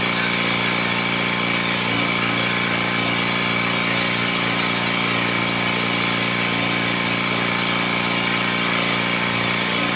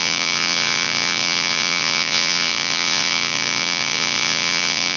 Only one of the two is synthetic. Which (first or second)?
second